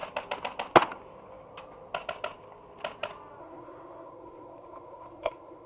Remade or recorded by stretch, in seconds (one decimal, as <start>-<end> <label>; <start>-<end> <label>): 0.0-3.4 recorded; 3.4-5.7 remade